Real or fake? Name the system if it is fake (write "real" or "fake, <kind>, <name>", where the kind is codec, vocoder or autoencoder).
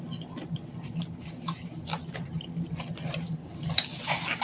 real